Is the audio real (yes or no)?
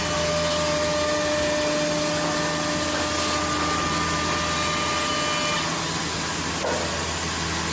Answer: yes